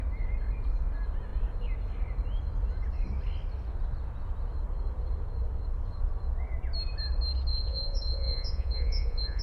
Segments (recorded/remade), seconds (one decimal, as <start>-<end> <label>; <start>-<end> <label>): 0.0-7.5 recorded; 7.5-9.4 remade